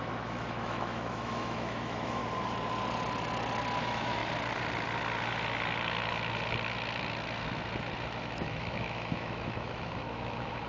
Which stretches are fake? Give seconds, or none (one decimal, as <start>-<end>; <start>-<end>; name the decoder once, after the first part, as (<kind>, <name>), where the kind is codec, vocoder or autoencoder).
0.0-2.2 (autoencoder, DAC-VAE); 3.8-4.2; 8.2-10.7